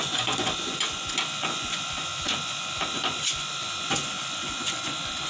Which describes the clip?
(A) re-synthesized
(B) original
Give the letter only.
A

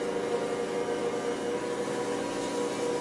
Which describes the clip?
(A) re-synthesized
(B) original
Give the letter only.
B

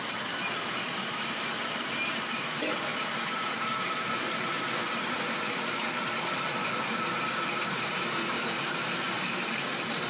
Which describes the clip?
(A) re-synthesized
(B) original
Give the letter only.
A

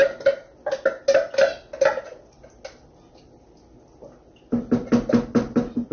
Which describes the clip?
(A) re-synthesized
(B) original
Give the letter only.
B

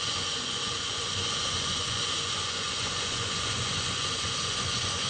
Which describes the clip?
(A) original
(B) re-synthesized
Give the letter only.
B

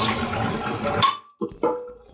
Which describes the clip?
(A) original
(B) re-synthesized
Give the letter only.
A